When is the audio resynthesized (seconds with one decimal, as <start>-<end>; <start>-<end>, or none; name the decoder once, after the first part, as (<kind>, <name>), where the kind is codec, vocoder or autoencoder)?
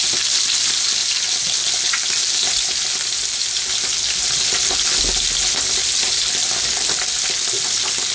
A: none